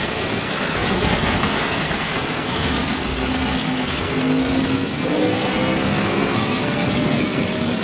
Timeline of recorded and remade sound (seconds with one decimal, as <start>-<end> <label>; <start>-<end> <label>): 0.0-7.8 remade